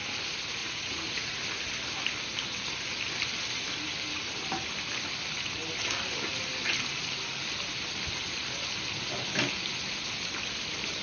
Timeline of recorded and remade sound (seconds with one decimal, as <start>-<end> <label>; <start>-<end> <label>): 0.0-0.6 recorded; 0.6-1.4 remade; 1.4-11.0 recorded